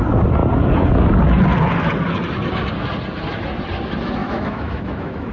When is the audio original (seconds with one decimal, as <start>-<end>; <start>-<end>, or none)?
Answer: 0.0-4.2